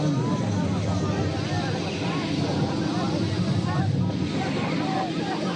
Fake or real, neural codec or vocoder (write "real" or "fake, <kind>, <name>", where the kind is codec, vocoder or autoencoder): real